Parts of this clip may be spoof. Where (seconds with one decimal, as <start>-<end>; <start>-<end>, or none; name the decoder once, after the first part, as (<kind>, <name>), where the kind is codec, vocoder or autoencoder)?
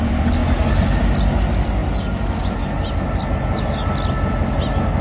none